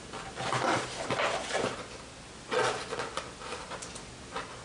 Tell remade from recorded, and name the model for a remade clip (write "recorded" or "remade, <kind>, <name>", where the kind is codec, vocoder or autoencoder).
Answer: recorded